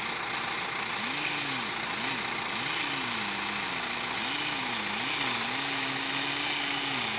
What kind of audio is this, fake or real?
real